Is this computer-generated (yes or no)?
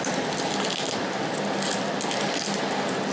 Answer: no